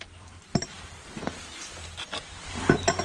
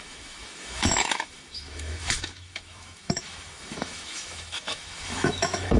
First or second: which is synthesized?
second